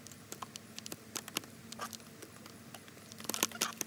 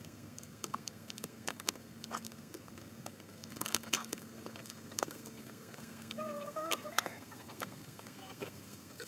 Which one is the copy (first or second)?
second